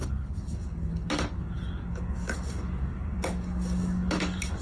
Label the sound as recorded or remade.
remade